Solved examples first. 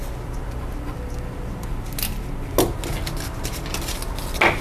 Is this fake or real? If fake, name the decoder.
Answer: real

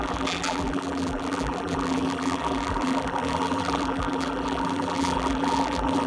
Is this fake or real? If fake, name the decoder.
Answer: fake, vocoder, BigVGAN v2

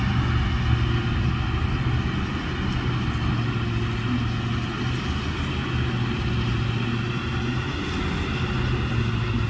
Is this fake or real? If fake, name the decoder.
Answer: real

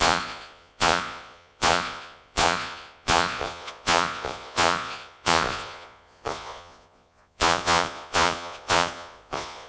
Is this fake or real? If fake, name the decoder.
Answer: fake, vocoder, Vocos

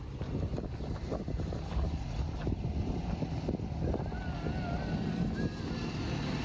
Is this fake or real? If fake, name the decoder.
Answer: real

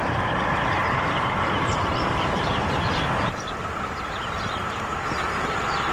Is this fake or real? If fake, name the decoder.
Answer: fake, vocoder, BigVGAN v2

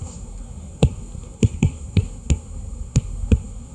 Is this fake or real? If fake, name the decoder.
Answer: fake, codec, SNAC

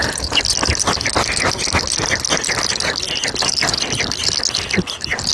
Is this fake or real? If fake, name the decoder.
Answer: real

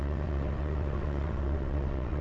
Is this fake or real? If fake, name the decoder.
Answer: fake, vocoder, WaveNeXt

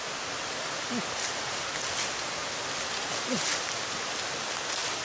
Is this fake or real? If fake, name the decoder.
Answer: real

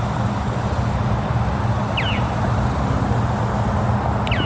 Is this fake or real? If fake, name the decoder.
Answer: real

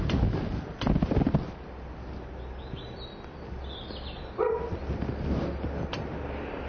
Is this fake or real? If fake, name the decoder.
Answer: real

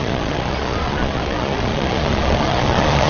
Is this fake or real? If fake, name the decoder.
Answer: fake, vocoder, Vocos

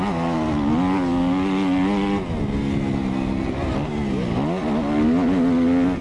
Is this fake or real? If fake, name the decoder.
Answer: real